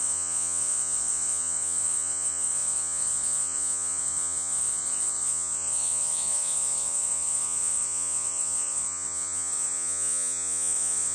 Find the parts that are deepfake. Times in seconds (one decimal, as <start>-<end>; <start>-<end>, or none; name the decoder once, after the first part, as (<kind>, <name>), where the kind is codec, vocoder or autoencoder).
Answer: 0.0-11.1 (vocoder, Vocos)